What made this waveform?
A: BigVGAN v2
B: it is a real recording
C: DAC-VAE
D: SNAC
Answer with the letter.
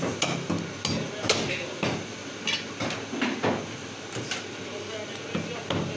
B